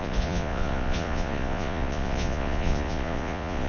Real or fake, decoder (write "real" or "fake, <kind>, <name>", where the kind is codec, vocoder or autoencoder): fake, vocoder, Vocos